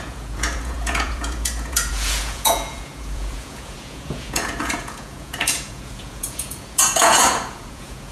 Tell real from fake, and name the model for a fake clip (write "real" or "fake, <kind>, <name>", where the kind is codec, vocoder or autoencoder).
fake, vocoder, Vocos